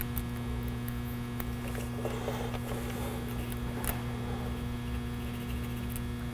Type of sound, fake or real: real